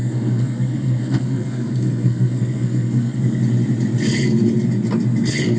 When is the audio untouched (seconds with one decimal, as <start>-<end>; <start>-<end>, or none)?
3.4-5.6